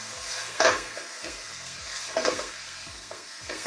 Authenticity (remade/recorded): remade